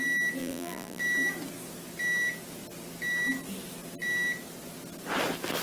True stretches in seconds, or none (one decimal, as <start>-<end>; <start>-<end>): 0.0-0.4; 1.0-5.6